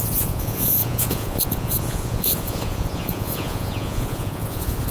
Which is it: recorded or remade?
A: remade